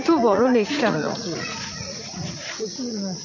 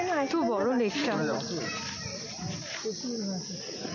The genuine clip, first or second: second